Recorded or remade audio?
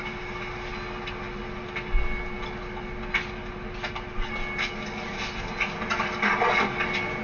recorded